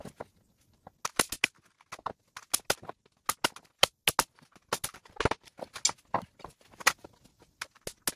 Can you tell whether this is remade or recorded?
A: recorded